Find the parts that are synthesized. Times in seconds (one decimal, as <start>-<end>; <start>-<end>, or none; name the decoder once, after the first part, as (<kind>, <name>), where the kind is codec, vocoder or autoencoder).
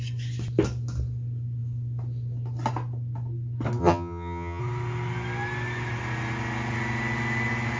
3.8-4.6 (vocoder, HiFi-GAN)